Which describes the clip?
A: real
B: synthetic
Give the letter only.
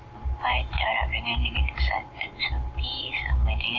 A